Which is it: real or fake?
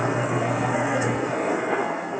fake